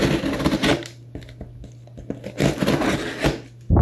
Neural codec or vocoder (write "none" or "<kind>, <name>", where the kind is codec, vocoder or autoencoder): none